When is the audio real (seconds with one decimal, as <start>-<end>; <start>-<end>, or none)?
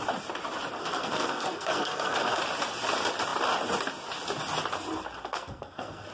0.0-0.8; 2.4-5.2